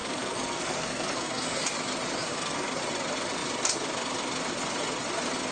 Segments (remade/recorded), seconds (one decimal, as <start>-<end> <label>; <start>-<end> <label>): 0.0-1.6 remade; 1.6-2.3 recorded; 2.3-2.8 remade; 2.8-5.5 recorded